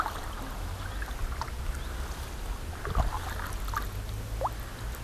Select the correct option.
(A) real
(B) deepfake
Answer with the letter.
A